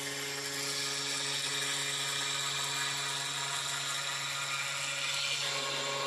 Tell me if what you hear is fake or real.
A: real